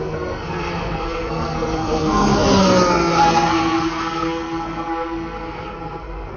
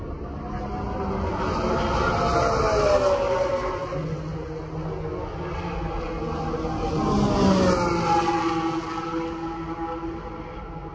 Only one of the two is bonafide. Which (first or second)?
second